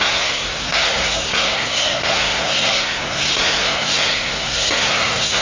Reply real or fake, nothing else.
fake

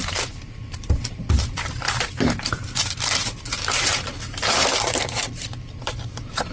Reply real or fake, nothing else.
fake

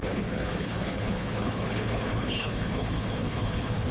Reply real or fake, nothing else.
fake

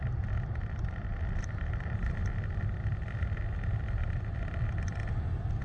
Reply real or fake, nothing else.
fake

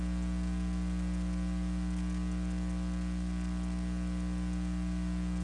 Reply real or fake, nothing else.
real